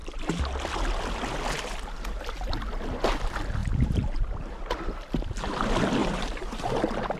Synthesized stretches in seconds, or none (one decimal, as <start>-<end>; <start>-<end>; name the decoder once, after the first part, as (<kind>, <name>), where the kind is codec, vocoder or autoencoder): 3.6-5.3 (vocoder, BigVGAN v2); 6.0-7.2